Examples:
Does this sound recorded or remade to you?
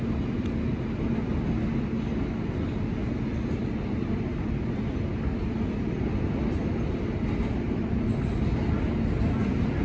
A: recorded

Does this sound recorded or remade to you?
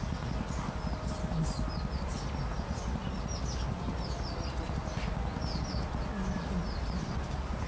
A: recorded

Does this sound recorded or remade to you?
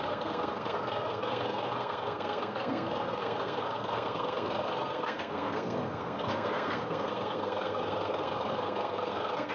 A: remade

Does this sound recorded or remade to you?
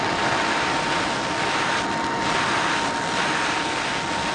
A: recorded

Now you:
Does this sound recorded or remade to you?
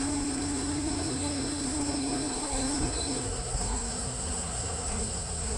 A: remade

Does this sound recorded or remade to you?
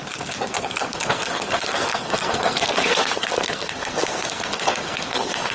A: remade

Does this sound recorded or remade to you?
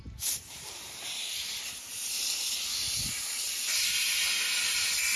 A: recorded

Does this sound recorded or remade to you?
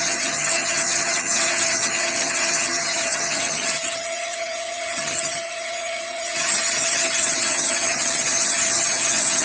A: remade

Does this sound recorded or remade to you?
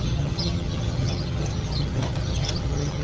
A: remade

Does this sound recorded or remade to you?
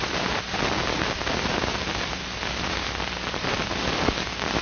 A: recorded